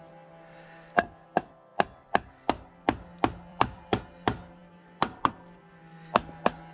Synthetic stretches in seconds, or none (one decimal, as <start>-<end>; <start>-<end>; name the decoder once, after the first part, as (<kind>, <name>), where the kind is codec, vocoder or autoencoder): 1.7-2.3 (vocoder, BigVGAN v2); 3.5-4.0